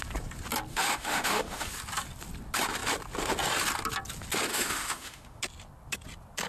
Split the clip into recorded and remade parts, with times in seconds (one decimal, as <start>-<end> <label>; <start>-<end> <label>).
0.0-0.7 recorded; 0.7-1.7 remade; 1.7-4.5 recorded; 4.5-5.4 remade; 5.4-6.5 recorded